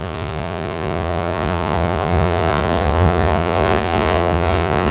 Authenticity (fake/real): fake